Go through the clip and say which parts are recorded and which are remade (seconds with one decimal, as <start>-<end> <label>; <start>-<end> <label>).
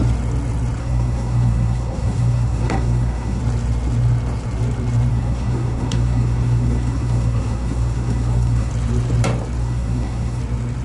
0.0-0.8 recorded; 0.8-3.4 remade; 3.4-5.1 recorded; 5.1-8.7 remade; 8.7-9.6 recorded; 9.6-10.4 remade; 10.4-10.8 recorded